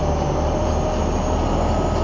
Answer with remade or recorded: recorded